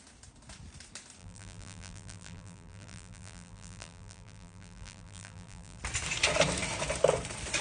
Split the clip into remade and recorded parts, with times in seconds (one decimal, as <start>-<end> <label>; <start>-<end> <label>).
0.0-1.2 recorded; 1.2-5.8 remade; 5.8-7.6 recorded